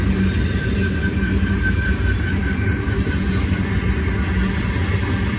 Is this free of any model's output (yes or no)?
yes